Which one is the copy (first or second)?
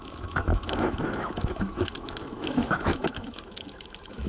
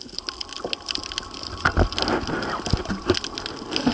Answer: first